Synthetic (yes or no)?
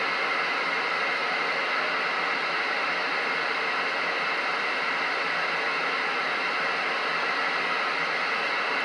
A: no